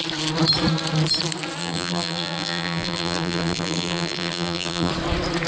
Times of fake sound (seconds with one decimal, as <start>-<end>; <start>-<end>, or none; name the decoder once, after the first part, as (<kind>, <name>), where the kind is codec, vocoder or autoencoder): 1.6-4.9 (vocoder, BigVGAN v2)